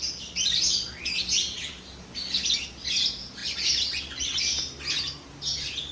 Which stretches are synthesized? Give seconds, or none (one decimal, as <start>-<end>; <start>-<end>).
none